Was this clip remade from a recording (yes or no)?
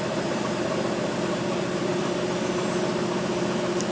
no